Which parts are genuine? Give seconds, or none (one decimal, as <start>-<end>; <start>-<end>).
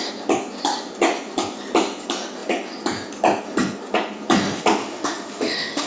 0.0-4.8